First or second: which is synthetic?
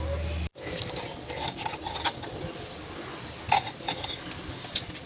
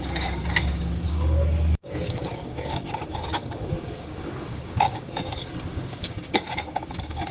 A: second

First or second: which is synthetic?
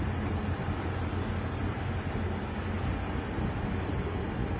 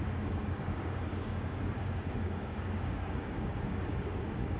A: second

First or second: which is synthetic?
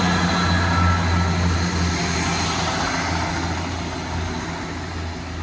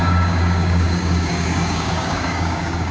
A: second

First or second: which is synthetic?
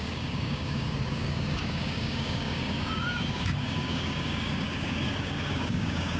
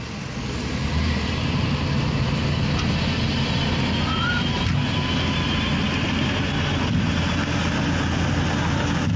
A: first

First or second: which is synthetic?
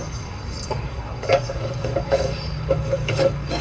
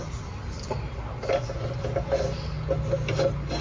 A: first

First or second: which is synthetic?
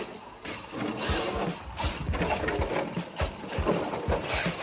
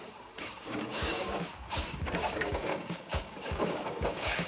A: second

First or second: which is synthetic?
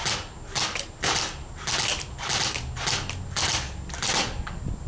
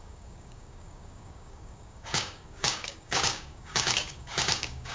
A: second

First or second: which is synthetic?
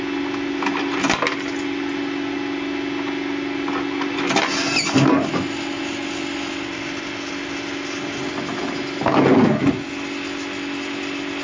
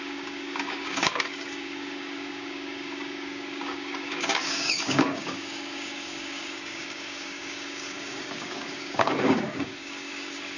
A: second